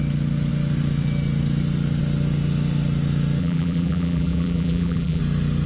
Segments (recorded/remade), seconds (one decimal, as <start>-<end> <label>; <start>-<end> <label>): 0.0-3.4 recorded; 3.4-5.2 remade; 5.2-5.7 recorded

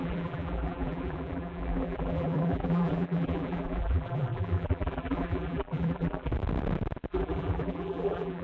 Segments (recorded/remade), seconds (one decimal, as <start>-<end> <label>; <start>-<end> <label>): 0.0-6.3 remade; 6.3-7.1 recorded; 7.1-8.4 remade

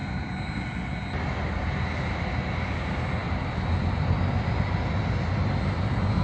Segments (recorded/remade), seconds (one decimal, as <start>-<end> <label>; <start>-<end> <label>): 0.0-3.2 recorded; 3.2-5.0 remade; 5.0-6.2 recorded

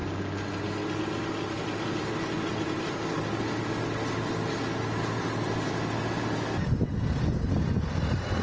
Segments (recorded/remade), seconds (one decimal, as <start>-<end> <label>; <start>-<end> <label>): 0.0-8.4 recorded

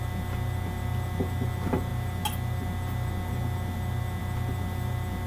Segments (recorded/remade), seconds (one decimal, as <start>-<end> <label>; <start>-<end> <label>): 0.0-5.3 recorded

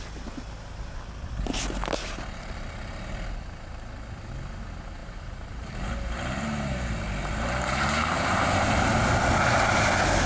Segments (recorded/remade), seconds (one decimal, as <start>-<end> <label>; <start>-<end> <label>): 0.0-5.0 recorded; 5.0-8.3 remade; 8.3-10.3 recorded

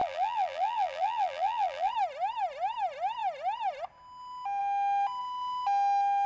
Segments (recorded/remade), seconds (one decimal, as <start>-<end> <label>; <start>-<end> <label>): 0.0-1.9 remade; 1.9-6.3 recorded